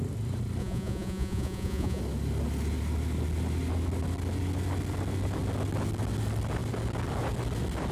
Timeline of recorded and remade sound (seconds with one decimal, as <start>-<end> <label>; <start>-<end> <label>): 0.0-0.6 recorded; 0.6-2.0 remade; 2.0-7.9 recorded